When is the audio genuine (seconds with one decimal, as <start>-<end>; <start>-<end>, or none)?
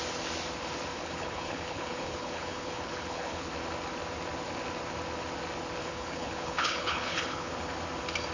0.0-0.9; 3.5-5.8; 7.5-8.3